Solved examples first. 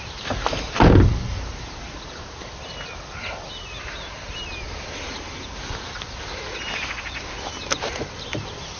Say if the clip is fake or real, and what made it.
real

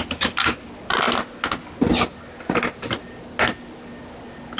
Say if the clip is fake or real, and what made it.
real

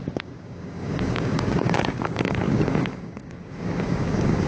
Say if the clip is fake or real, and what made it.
fake, codec, DAC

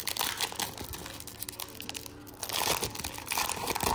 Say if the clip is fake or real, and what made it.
real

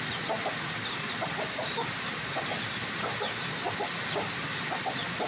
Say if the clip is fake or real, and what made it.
real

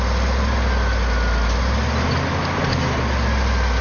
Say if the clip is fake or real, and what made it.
real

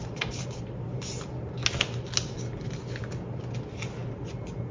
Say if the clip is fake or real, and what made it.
real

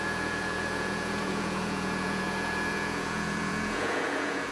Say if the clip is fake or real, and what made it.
fake, vocoder, Vocos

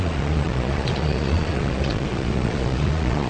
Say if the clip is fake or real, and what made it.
fake, vocoder, Vocos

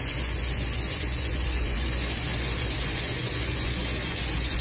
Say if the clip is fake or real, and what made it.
fake, vocoder, Vocos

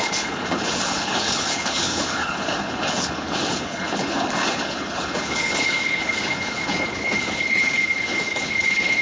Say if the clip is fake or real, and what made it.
fake, codec, HILCodec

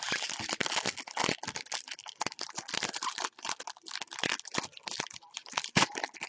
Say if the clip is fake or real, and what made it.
real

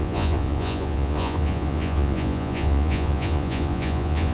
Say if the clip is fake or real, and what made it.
fake, vocoder, Vocos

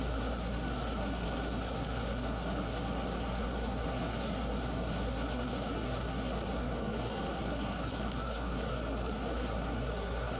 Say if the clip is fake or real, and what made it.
fake, codec, SNAC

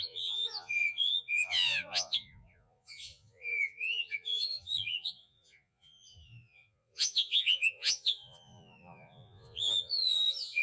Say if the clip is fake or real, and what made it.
fake, vocoder, Vocos